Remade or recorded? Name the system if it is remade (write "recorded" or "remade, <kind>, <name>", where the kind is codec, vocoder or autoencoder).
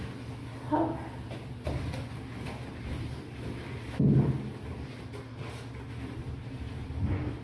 recorded